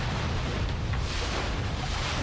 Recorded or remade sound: remade